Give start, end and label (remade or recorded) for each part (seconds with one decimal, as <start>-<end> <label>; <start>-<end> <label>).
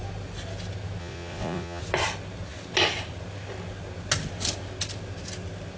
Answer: 0.0-1.0 recorded; 1.0-1.8 remade; 1.8-5.8 recorded